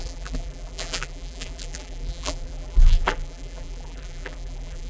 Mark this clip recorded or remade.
remade